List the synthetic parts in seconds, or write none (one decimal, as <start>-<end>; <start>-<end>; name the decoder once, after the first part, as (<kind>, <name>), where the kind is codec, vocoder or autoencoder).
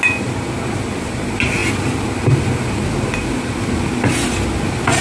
none